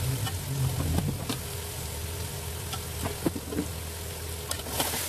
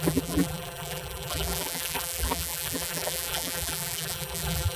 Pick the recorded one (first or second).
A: first